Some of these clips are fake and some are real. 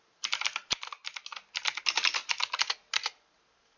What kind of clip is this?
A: real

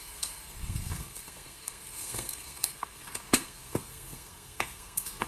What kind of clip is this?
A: fake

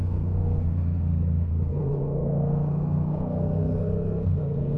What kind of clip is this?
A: fake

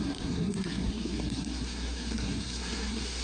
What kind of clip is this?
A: fake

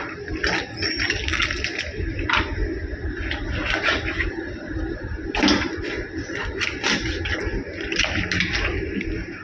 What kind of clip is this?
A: real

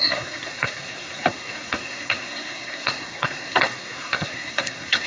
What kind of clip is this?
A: fake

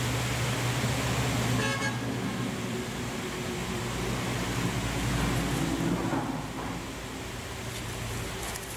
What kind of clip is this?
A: real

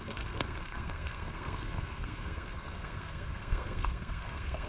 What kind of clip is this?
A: fake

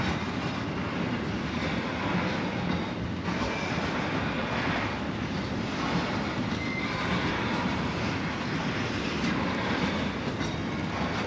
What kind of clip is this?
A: real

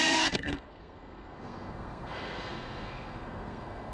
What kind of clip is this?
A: fake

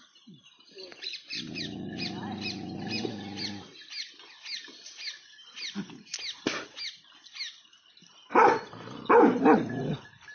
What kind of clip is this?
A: real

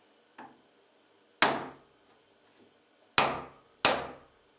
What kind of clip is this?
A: real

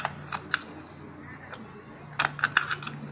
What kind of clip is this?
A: real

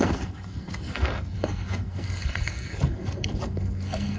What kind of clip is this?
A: fake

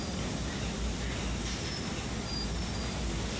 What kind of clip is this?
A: real